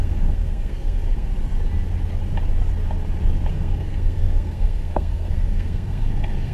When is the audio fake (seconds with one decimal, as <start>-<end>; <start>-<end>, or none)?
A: 0.0-1.3; 3.5-6.5